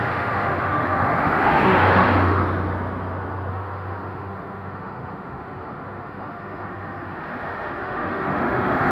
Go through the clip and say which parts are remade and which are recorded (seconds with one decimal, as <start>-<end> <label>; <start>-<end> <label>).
0.0-2.4 remade; 2.4-3.5 recorded; 3.5-8.9 remade

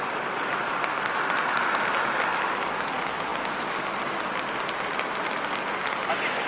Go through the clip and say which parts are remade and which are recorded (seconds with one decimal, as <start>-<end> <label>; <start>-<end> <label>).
0.0-6.5 recorded

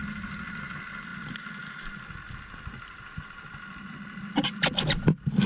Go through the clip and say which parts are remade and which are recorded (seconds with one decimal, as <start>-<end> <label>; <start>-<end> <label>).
0.0-5.5 recorded